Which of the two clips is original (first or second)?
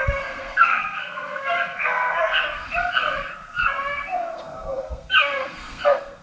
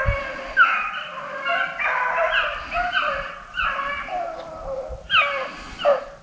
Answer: second